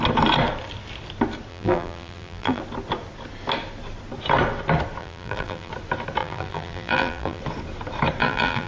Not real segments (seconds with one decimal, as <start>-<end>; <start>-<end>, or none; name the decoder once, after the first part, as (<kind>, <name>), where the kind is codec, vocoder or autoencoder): 1.5-2.6 (vocoder, BigVGAN v2); 5.0-5.7; 6.2-7.4; 8.2-8.7